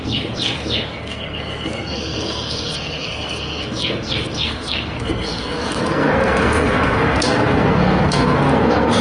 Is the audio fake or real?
fake